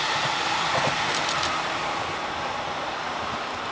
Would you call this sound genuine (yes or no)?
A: yes